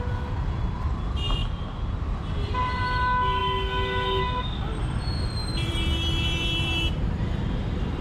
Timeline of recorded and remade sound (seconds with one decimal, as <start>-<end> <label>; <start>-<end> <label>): 0.0-1.4 recorded; 1.4-2.8 remade; 2.8-5.4 recorded; 5.4-8.0 remade